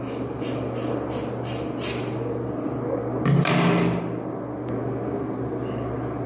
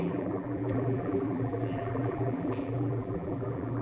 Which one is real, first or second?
first